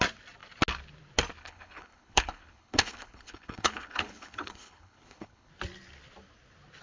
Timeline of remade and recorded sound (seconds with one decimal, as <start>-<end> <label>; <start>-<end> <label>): 0.0-1.4 recorded; 1.4-5.5 remade; 5.5-6.8 recorded